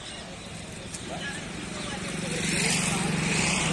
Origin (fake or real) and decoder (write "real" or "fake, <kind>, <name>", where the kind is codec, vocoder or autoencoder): real